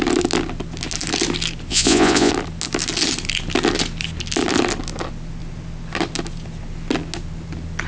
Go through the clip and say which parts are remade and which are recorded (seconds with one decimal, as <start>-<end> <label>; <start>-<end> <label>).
0.0-1.7 recorded; 1.7-2.3 remade; 2.3-7.9 recorded